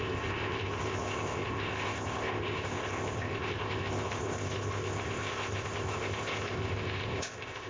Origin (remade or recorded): remade